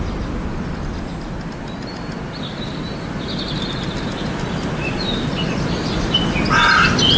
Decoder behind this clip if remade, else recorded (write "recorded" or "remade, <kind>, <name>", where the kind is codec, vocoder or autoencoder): recorded